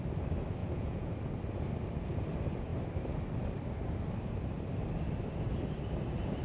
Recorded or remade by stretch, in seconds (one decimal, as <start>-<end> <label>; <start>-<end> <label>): 0.0-0.6 recorded; 0.6-1.1 remade; 1.1-6.4 recorded